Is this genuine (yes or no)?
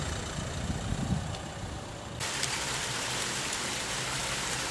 no